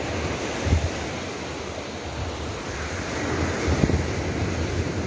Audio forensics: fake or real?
real